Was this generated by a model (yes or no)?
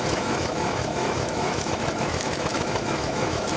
yes